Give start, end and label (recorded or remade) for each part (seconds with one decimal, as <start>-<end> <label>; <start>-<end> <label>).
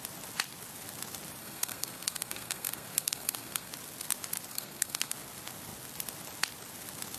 0.0-1.4 recorded; 1.4-3.7 remade; 3.7-4.5 recorded; 4.5-5.1 remade; 5.1-7.2 recorded